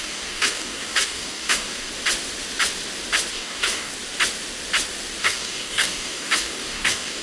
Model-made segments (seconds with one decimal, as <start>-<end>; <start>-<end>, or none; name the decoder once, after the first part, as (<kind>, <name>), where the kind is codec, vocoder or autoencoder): 0.0-1.9 (codec, DAC); 3.3-3.9; 5.2-7.2